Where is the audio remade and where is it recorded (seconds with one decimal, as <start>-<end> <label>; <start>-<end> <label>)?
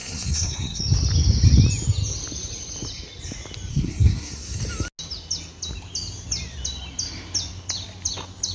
0.0-0.8 remade; 0.8-3.7 recorded; 3.7-4.6 remade; 4.6-8.5 recorded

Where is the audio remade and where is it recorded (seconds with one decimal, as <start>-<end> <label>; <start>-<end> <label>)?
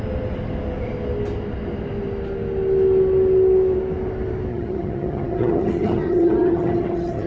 0.0-4.5 recorded; 4.5-7.3 remade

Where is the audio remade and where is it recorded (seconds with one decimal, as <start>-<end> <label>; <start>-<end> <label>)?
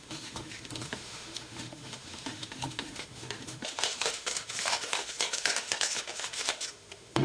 0.0-7.2 remade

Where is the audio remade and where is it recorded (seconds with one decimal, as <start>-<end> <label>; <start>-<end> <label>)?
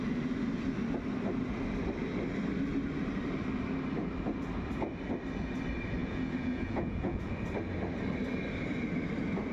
0.0-6.0 recorded; 6.0-7.3 remade; 7.3-9.5 recorded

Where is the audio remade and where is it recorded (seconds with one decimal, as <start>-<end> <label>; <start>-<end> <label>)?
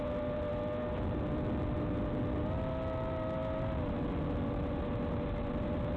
0.0-6.0 recorded